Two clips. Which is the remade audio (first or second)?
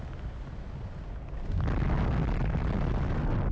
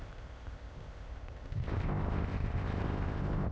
second